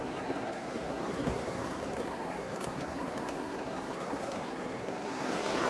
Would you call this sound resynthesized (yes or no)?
yes